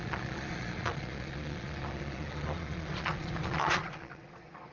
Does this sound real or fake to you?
fake